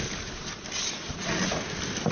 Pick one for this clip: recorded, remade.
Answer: recorded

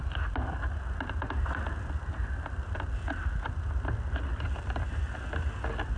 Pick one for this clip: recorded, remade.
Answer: recorded